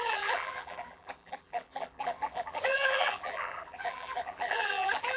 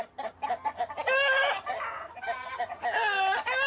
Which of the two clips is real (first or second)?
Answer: second